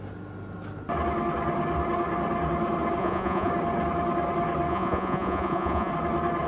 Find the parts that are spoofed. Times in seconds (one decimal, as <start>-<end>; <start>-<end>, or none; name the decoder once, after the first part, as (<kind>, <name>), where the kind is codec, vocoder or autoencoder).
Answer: 3.0-3.5 (vocoder, Vocos); 4.7-5.9